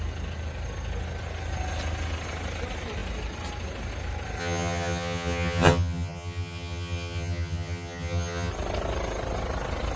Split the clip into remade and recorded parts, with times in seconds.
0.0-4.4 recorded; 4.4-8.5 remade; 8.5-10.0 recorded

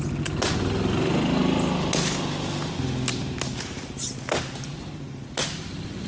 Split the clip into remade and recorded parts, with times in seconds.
0.0-6.1 recorded

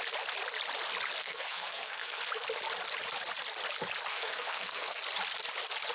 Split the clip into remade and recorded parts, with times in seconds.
0.0-1.2 recorded; 1.2-2.2 remade; 2.2-4.1 recorded; 4.1-5.0 remade; 5.0-5.9 recorded

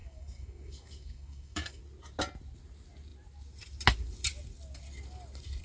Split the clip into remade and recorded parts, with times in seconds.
0.0-1.8 remade; 1.8-5.6 recorded

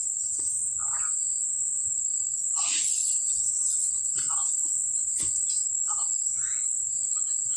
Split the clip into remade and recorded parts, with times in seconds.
0.0-0.8 remade; 0.8-1.9 recorded; 1.9-7.6 remade